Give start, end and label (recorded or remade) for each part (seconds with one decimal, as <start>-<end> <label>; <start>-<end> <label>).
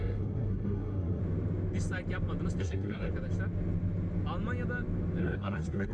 0.0-1.2 remade; 1.2-2.6 recorded; 2.6-3.1 remade; 3.1-5.2 recorded; 5.2-5.9 remade